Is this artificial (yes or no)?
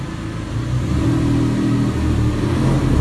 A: no